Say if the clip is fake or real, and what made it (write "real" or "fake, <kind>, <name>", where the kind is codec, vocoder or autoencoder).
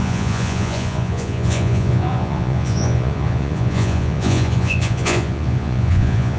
fake, vocoder, Vocos